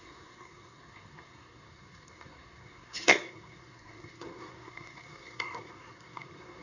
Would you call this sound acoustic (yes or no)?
no